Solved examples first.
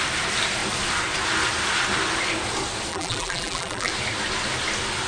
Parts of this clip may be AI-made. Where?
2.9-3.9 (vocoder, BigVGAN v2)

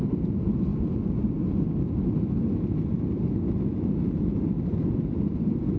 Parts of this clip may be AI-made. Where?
none

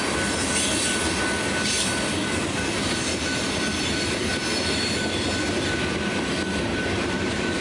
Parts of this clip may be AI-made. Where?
6.7-7.6 (vocoder, BigVGAN v2)